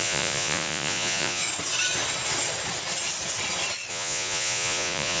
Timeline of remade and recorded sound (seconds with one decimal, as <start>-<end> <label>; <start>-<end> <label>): 0.0-1.4 remade; 1.4-3.9 recorded; 3.9-5.2 remade